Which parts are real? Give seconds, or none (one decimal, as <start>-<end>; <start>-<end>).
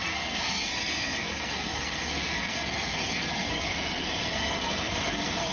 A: none